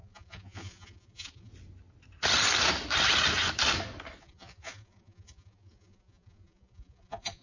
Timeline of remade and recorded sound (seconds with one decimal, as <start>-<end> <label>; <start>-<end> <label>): 0.0-1.5 remade; 1.5-4.2 recorded; 4.2-7.4 remade

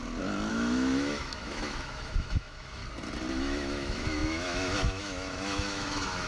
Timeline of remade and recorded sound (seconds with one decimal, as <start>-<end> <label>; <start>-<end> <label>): 0.0-0.5 recorded; 0.5-2.8 remade; 2.8-3.3 recorded; 3.3-6.3 remade

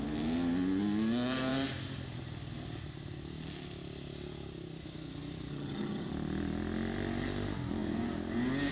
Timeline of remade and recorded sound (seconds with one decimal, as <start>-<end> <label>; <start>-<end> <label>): 0.0-5.5 recorded; 5.5-6.1 remade; 6.1-8.7 recorded

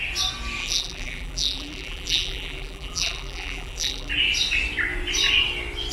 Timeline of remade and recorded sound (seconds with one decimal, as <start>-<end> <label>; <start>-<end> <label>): 0.0-0.6 recorded; 0.6-4.1 remade; 4.1-5.9 recorded

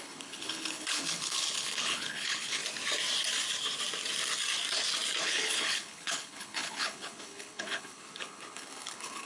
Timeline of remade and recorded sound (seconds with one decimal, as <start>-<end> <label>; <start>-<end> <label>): 0.0-2.6 remade; 2.6-5.2 recorded; 5.2-9.3 remade